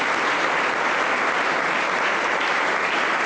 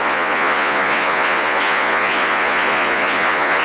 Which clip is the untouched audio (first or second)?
first